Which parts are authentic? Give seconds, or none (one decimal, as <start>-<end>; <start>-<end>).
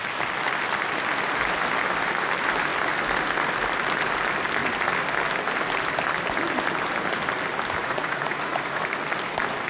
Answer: 0.0-7.8; 8.8-9.7